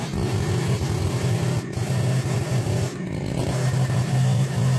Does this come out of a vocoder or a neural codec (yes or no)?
no